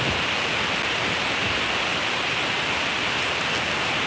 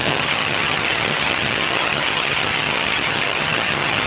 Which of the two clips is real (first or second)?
first